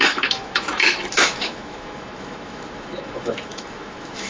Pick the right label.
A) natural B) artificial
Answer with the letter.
B